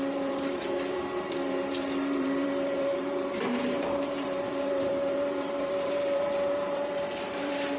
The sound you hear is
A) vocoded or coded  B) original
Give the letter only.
A